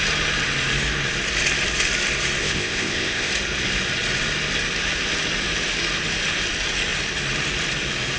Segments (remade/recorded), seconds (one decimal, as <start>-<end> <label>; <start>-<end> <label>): 0.0-2.4 recorded; 2.4-3.3 remade; 3.3-8.2 recorded